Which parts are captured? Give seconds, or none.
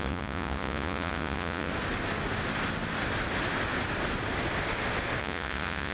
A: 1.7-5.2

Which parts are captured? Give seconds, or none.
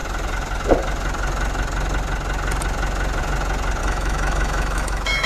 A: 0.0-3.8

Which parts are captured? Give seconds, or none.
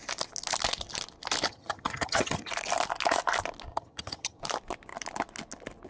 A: 0.0-1.5; 2.5-3.7; 4.4-5.9